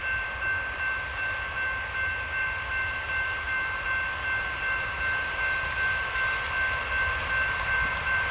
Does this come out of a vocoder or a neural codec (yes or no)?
no